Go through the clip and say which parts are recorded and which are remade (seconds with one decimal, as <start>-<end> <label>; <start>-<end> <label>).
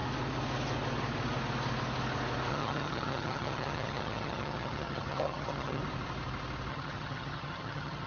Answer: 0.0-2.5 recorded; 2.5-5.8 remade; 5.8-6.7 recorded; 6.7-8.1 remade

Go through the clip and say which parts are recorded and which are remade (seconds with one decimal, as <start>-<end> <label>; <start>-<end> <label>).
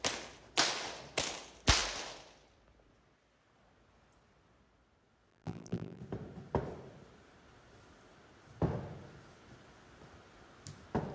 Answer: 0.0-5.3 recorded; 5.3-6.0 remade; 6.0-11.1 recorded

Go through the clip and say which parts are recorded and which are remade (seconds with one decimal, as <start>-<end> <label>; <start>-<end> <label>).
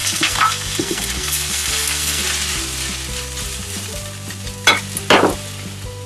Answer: 0.0-2.2 remade; 2.2-6.1 recorded